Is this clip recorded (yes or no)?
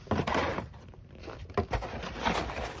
yes